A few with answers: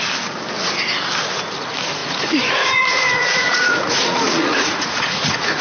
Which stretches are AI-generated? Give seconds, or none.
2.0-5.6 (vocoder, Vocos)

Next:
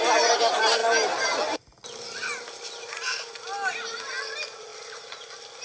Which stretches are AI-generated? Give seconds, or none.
none

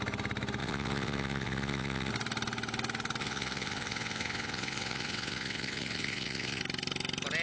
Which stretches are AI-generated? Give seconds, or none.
0.6-2.1 (vocoder, WaveNeXt); 3.2-6.6

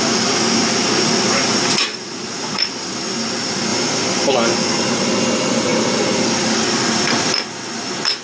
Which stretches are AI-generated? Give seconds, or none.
1.9-2.7 (vocoder, Vocos)